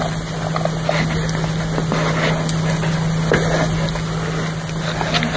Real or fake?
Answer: real